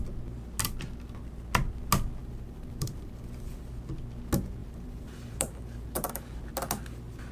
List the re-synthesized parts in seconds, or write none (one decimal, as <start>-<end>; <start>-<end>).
2.2-3.7; 4.6-6.1